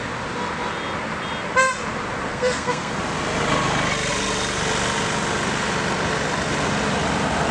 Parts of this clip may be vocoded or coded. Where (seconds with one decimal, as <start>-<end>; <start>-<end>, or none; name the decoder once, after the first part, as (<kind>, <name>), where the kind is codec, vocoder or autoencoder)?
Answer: 2.3-2.9 (codec, SNAC)